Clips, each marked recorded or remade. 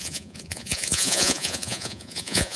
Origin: remade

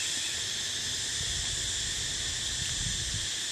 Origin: recorded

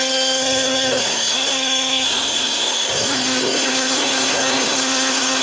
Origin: remade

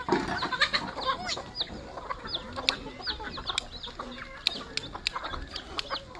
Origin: recorded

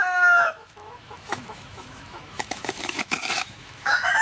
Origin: remade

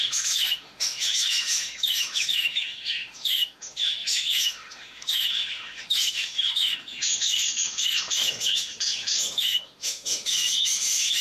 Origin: remade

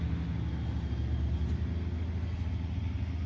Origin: recorded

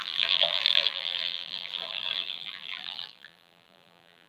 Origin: remade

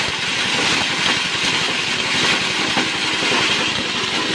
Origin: recorded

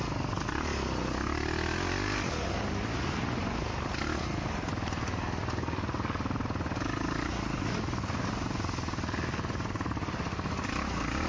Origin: recorded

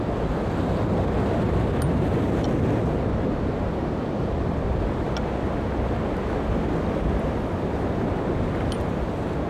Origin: recorded